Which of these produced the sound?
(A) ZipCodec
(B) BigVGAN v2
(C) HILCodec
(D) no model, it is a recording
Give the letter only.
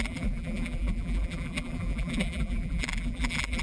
B